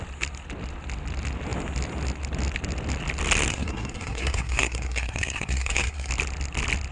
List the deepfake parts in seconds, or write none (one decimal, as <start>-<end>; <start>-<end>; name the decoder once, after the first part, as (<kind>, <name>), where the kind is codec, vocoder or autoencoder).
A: 3.5-6.1 (codec, SNAC)